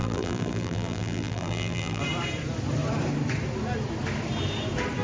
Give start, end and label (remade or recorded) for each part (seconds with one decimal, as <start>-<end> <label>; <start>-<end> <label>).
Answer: 0.0-2.0 remade; 2.0-5.0 recorded